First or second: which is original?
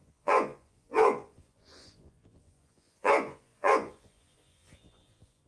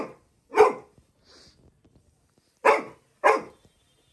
second